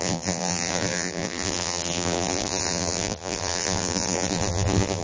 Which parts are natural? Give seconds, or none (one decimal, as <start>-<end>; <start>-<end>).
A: none

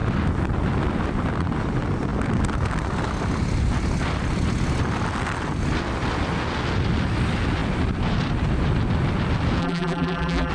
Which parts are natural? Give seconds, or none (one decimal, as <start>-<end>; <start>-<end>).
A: 0.0-9.6